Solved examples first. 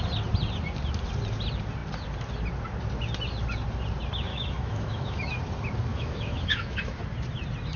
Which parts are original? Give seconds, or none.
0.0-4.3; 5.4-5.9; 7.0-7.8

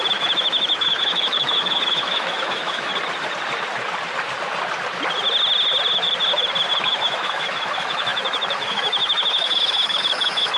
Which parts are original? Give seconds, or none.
2.9-6.8

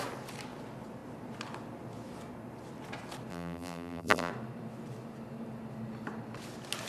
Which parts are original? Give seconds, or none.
0.0-3.3; 4.3-6.9